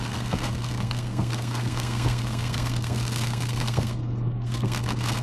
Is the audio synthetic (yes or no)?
yes